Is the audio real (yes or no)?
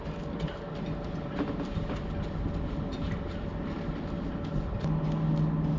yes